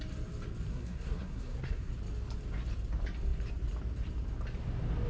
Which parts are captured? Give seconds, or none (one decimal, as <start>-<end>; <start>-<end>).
0.0-0.7; 1.9-5.1